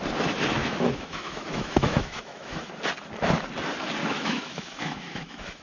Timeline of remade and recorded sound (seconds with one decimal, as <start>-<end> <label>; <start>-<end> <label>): 0.0-0.6 recorded; 0.6-2.7 remade; 2.7-4.0 recorded; 4.0-5.6 remade